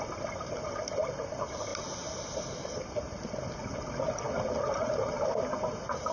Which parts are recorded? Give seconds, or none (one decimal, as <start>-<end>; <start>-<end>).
0.0-6.1